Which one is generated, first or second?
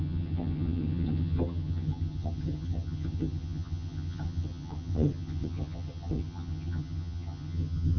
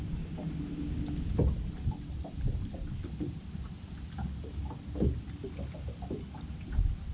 first